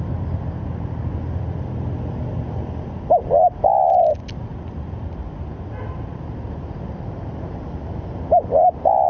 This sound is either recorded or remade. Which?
recorded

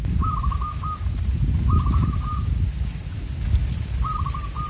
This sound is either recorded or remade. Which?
recorded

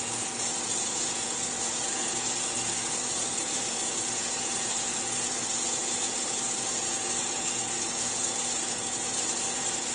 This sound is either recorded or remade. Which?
remade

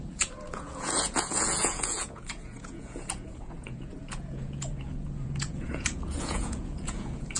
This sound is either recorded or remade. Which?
remade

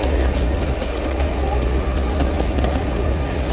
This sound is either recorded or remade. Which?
remade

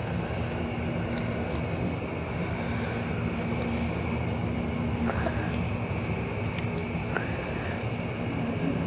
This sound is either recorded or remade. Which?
recorded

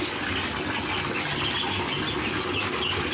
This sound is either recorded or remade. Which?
recorded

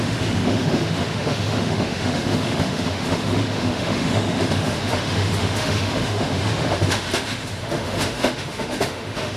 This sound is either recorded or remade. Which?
remade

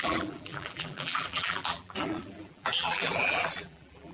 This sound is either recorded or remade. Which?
remade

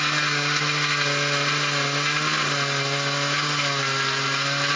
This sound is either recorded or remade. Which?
recorded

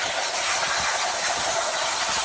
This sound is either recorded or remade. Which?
recorded